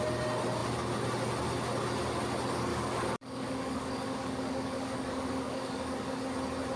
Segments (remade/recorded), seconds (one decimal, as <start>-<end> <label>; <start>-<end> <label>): 0.0-2.7 recorded; 2.7-6.2 remade; 6.2-6.8 recorded